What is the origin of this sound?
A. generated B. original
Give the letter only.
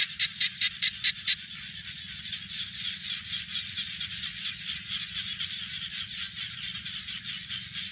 A